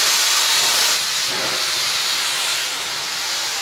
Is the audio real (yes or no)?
no